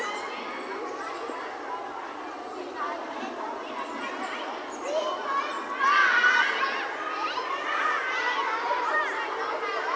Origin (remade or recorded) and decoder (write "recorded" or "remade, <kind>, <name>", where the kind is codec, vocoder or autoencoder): recorded